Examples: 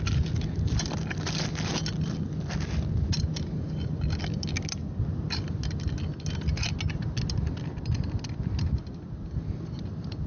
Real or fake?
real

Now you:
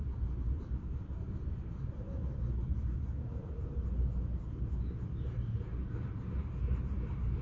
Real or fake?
real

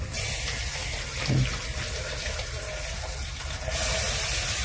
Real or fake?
real